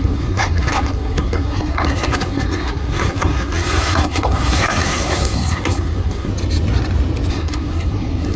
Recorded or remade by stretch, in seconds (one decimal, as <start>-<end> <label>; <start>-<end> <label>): 0.0-6.3 remade; 6.3-7.3 recorded; 7.3-8.4 remade